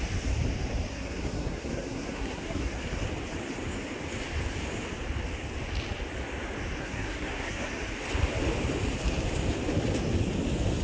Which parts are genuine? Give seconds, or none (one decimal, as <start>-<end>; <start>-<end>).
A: 0.0-0.9; 2.7-6.8; 7.7-10.8